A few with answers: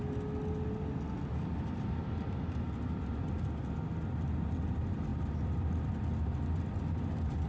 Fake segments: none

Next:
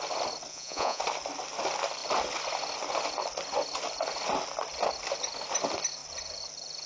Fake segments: 0.5-1.0 (vocoder, Vocos)